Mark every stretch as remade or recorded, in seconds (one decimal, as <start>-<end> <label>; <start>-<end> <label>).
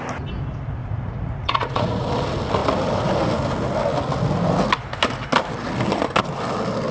0.0-0.8 recorded; 0.8-2.1 remade; 2.1-6.9 recorded